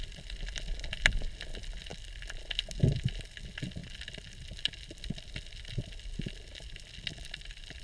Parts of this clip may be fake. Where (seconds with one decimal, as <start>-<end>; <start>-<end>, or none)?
none

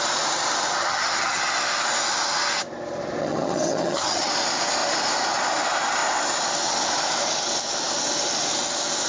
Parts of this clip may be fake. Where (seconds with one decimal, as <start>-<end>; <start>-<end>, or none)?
0.8-1.4; 3.2-4.3

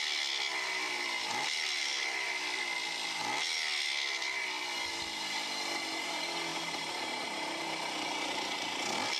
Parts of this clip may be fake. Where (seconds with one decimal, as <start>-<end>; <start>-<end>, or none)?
0.5-2.6; 6.5-7.6

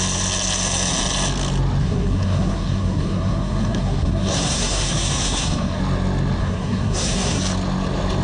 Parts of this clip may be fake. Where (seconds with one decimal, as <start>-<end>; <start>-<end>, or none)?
1.8-5.8; 6.4-7.4

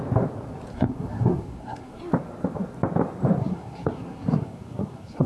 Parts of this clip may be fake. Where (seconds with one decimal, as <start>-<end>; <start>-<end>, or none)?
0.7-2.0; 3.4-5.3